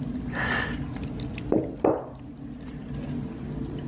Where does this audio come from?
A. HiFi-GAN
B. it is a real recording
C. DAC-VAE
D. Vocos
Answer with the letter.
B